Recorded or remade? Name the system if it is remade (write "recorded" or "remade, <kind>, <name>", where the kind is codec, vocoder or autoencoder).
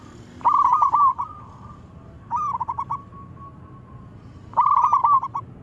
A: recorded